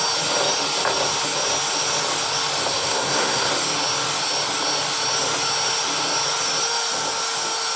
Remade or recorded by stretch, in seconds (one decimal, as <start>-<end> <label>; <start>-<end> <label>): 0.0-2.7 recorded; 2.7-3.5 remade; 3.5-7.8 recorded